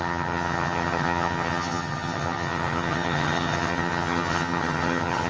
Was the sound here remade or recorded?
remade